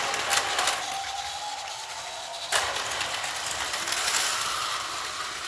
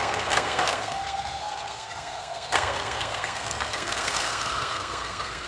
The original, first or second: first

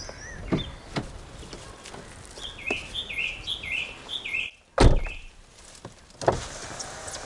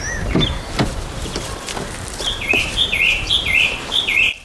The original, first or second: first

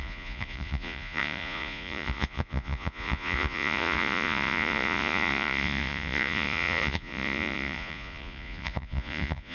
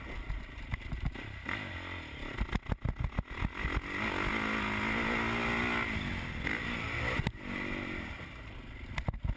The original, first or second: second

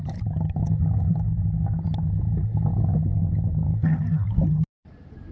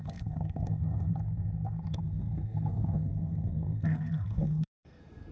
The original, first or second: first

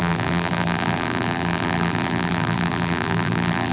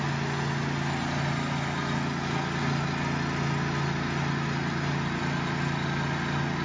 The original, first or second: second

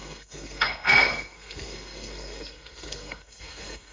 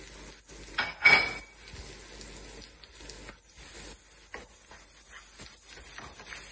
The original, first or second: second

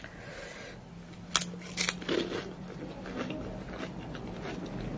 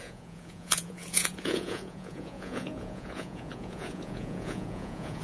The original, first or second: first